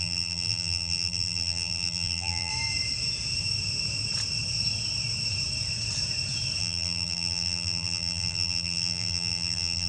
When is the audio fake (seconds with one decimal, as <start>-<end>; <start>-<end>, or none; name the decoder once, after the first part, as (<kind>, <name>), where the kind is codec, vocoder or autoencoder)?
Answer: 0.0-2.5 (vocoder, BigVGAN v2); 6.6-9.9